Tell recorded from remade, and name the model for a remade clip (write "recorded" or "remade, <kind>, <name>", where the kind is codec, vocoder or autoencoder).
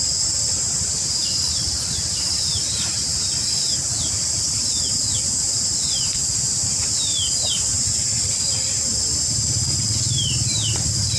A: remade, vocoder, BigVGAN v2